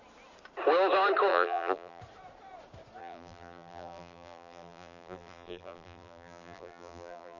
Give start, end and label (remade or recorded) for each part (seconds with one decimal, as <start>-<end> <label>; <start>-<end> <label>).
0.0-1.3 recorded; 1.3-2.0 remade; 2.0-3.0 recorded; 3.0-7.4 remade